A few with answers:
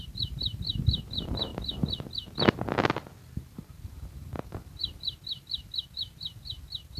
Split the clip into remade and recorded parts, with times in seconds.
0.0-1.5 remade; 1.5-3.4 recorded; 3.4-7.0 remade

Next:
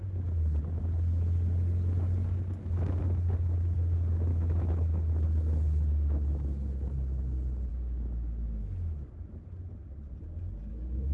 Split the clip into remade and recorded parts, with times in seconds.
0.0-4.3 recorded; 4.3-4.9 remade; 4.9-11.1 recorded